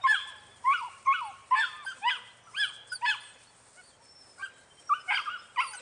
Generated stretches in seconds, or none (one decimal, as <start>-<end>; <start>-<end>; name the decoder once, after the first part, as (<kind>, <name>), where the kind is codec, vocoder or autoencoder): 0.0-1.4 (vocoder, BigVGAN v2); 4.0-5.8